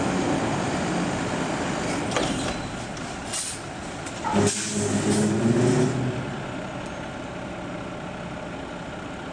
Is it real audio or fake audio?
real